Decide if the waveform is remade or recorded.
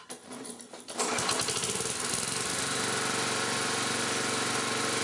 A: recorded